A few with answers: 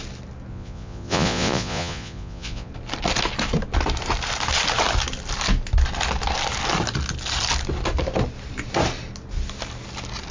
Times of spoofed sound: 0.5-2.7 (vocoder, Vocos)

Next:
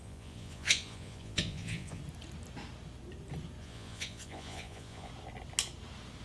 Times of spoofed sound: 0.0-2.0 (vocoder, Vocos); 3.6-5.1

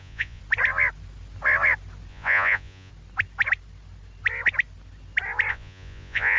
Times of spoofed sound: 0.0-0.4 (vocoder, Vocos); 2.1-2.9; 5.5-6.4

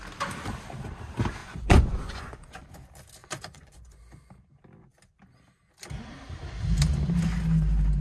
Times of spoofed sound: 1.4-2.7 (vocoder, Vocos); 3.2-4.0